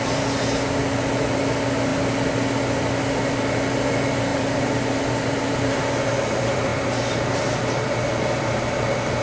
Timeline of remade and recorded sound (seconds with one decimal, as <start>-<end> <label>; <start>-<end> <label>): 0.0-4.3 recorded; 4.3-5.8 remade; 5.8-9.2 recorded